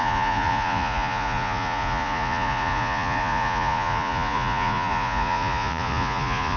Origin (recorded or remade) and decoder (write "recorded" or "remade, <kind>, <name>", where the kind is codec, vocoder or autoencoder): remade, vocoder, Vocos